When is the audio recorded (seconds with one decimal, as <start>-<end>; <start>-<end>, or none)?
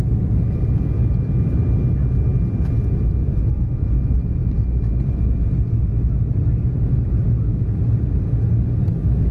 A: 0.0-9.3